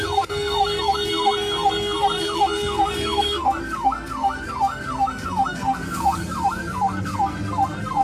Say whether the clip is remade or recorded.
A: remade